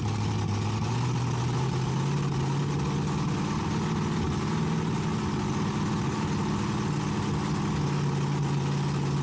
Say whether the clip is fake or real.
real